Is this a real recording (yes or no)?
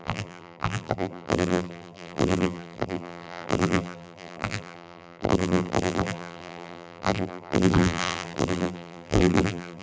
no